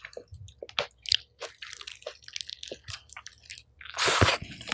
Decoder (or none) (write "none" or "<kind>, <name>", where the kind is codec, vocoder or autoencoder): none